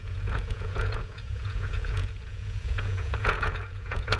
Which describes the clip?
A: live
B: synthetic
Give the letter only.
B